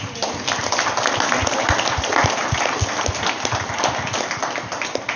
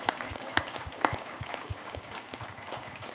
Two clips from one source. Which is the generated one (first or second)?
second